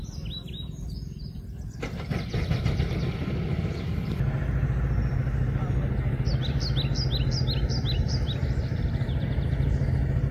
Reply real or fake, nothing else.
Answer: real